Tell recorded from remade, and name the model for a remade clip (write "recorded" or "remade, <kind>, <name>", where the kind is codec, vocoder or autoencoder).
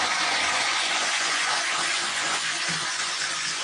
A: remade, vocoder, Vocos